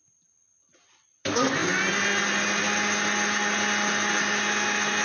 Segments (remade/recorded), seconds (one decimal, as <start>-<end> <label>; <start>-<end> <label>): 0.0-5.0 recorded